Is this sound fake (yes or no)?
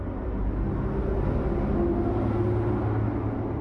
no